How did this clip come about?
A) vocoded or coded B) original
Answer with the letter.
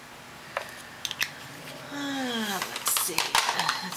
B